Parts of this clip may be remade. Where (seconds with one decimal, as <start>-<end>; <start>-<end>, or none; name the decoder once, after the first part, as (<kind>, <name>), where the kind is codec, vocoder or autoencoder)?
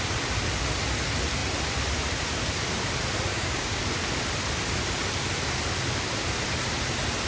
3.3-3.8 (codec, DAC)